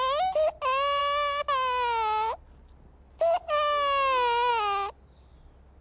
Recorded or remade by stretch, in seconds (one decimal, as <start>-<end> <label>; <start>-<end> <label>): 0.0-5.8 recorded